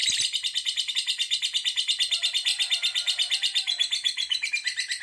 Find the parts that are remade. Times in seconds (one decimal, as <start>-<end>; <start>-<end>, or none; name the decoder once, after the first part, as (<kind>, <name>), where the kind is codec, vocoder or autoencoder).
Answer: 0.0-0.9 (vocoder, BigVGAN v2); 2.5-4.5